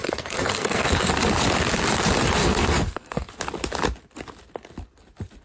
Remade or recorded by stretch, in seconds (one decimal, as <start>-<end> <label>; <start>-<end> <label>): 0.0-1.1 remade; 1.1-2.4 recorded; 2.4-3.3 remade; 3.3-5.4 recorded